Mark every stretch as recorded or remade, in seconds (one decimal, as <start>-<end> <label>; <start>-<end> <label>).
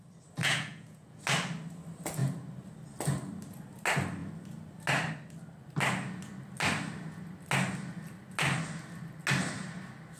0.0-0.4 recorded; 0.4-1.2 remade; 1.2-10.2 recorded